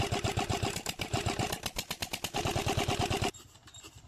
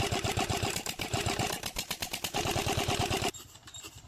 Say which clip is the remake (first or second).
second